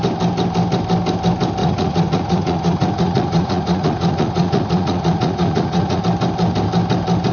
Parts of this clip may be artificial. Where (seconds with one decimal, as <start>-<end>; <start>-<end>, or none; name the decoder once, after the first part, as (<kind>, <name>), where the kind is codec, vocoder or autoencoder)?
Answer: 1.6-6.0 (vocoder, Vocos)